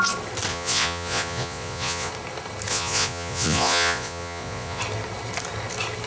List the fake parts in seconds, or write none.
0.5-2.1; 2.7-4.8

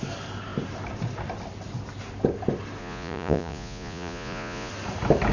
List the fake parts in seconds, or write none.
2.8-4.7